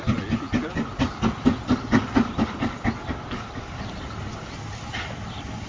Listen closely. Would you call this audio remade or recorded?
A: recorded